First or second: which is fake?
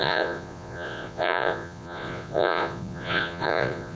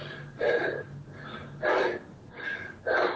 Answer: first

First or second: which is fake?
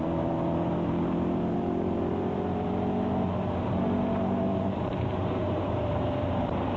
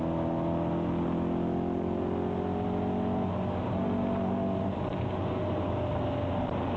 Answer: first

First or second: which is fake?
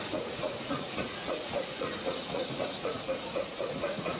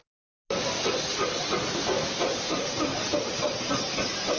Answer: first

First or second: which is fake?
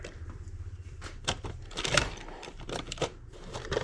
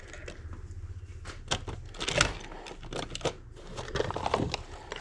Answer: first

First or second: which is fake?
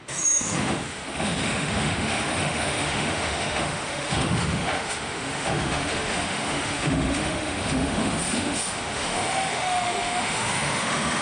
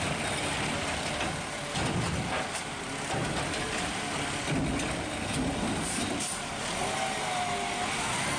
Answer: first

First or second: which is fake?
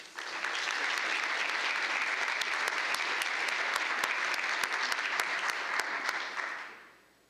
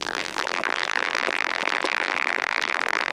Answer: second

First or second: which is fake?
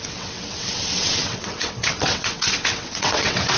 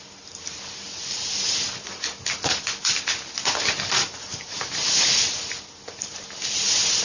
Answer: first